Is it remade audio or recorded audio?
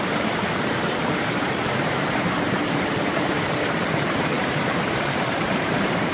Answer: remade